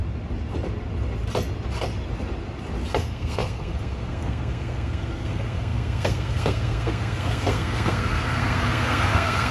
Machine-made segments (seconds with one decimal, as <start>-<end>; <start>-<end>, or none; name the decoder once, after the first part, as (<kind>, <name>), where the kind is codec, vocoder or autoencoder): 2.9-9.5 (codec, SNAC)